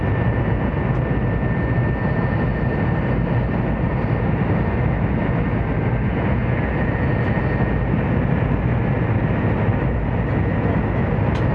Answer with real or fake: real